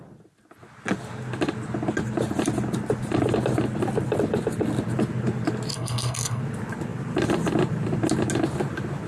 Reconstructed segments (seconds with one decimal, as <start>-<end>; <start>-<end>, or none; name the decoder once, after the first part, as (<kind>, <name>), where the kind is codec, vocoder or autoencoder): 5.7-6.4 (codec, SNAC)